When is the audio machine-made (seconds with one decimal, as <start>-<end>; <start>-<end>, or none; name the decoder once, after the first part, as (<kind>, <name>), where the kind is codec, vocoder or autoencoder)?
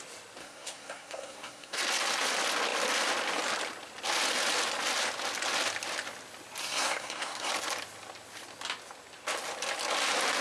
0.4-1.8 (codec, SNAC); 6.6-7.5